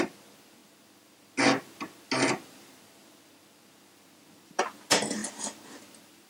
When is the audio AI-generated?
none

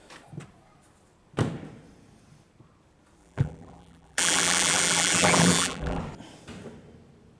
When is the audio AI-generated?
3.2-6.0

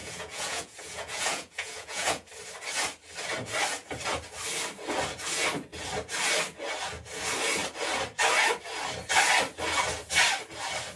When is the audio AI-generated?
0.0-2.3

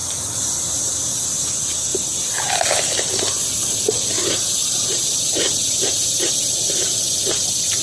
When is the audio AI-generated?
4.6-7.0

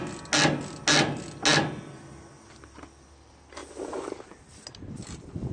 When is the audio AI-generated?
none

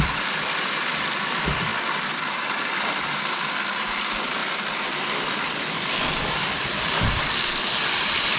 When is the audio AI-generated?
0.0-4.4; 5.3-8.4

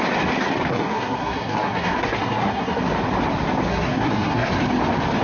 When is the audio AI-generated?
0.7-2.8; 3.7-4.5

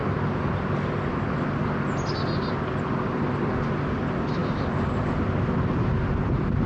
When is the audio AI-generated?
none